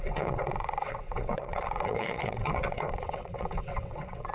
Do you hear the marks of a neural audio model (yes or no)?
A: yes